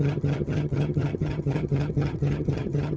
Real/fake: fake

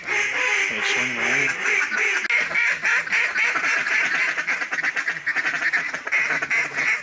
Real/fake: real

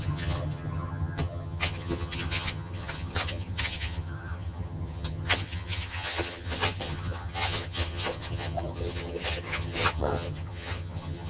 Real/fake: fake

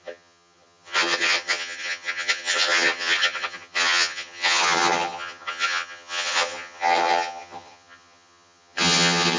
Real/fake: fake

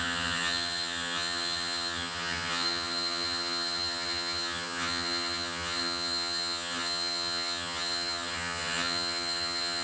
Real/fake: fake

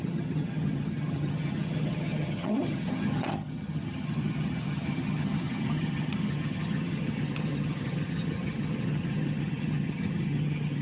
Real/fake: fake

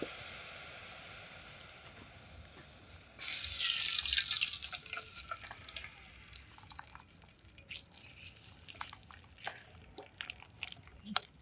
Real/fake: real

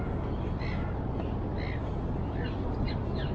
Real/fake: real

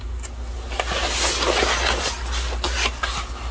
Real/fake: real